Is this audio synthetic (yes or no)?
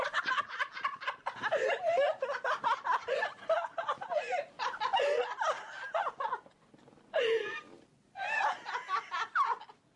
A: no